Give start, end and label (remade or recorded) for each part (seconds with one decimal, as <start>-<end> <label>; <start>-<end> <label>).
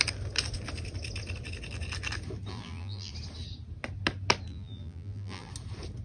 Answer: 0.0-2.5 recorded; 2.5-3.1 remade; 3.1-4.5 recorded; 4.5-5.5 remade; 5.5-6.0 recorded